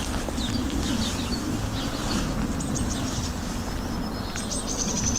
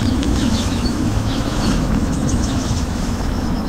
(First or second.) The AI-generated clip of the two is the second